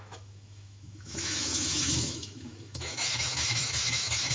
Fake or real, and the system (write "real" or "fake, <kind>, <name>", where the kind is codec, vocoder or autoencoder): fake, autoencoder, DAC-VAE